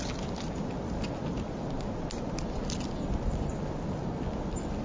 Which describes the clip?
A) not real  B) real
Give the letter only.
B